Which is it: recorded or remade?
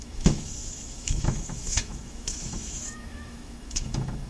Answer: remade